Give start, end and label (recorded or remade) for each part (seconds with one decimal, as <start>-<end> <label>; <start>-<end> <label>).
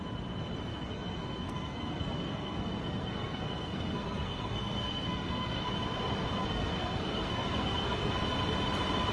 0.0-0.7 recorded; 0.7-5.7 remade; 5.7-6.4 recorded; 6.4-8.1 remade; 8.1-9.1 recorded